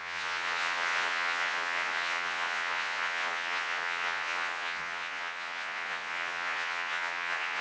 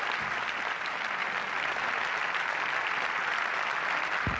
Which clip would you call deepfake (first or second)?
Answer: first